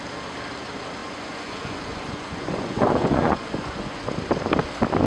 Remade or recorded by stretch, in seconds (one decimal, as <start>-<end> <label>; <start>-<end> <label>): 0.0-1.0 recorded; 1.0-4.1 remade; 4.1-5.1 recorded